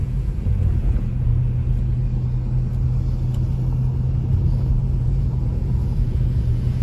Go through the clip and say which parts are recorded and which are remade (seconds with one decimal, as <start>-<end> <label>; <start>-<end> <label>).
0.0-1.3 remade; 1.3-4.7 recorded; 4.7-6.8 remade